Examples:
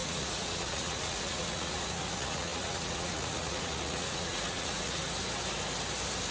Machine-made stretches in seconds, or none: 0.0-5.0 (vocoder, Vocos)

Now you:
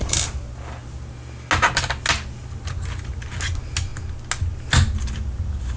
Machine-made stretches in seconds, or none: none

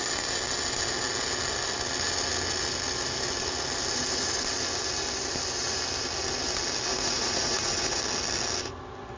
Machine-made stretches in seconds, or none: 6.9-8.0 (vocoder, Vocos)

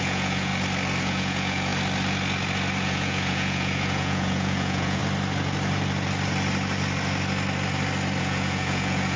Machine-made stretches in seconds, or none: 0.0-0.5 (vocoder, Vocos); 1.0-1.7; 2.8-5.0; 8.2-9.2

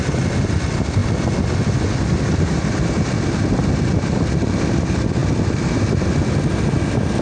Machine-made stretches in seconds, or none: none

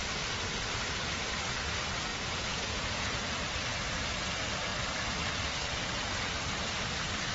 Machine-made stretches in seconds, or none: 2.1-3.1 (vocoder, Vocos)